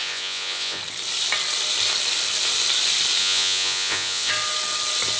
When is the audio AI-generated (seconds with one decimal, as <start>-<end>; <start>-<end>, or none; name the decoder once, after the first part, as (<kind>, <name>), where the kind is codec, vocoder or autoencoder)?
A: 0.0-0.8 (vocoder, Vocos); 3.2-4.3